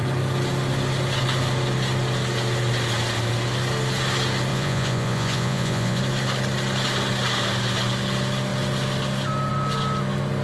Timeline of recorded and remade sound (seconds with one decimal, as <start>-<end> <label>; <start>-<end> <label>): 0.0-4.5 recorded; 4.5-6.0 remade; 6.0-10.4 recorded